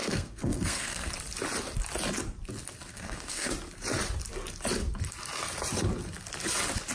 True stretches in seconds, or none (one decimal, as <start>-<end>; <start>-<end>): 1.1-2.9; 3.5-6.9